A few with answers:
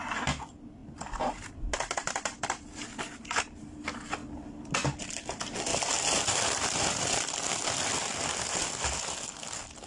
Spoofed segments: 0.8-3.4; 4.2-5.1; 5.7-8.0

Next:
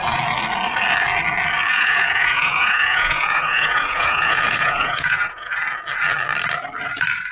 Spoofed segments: 1.7-5.5